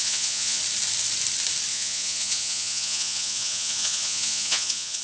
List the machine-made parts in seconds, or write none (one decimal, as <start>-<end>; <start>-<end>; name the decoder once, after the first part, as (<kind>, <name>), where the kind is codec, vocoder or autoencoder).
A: 0.0-0.6 (vocoder, Vocos); 1.7-5.0